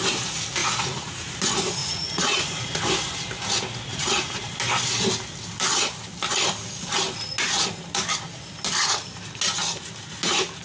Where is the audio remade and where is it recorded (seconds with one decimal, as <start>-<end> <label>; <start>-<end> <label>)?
0.0-0.6 recorded; 0.6-1.3 remade; 1.3-1.8 recorded; 1.8-2.8 remade; 2.8-3.9 recorded; 3.9-4.5 remade; 4.5-10.6 recorded